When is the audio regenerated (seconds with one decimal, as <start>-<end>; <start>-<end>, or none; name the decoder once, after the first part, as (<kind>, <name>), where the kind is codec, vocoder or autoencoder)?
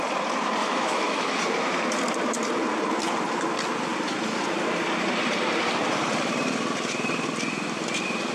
0.6-1.4 (autoencoder, DAC-VAE)